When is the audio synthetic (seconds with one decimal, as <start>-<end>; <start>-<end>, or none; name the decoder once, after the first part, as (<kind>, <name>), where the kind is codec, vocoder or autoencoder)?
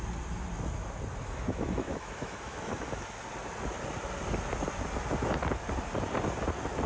1.2-3.2 (autoencoder, DAC-VAE)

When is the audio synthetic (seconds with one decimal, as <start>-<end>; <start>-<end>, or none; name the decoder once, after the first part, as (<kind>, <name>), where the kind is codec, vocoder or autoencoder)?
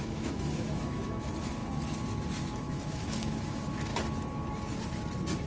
0.0-1.6 (autoencoder, DAC-VAE); 2.4-3.9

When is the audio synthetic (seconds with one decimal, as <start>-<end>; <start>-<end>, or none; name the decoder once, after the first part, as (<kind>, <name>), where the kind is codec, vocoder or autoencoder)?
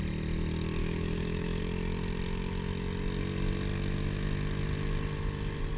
0.8-1.6 (autoencoder, DAC-VAE)